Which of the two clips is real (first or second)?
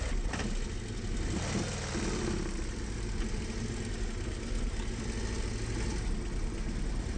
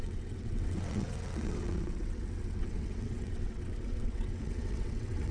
first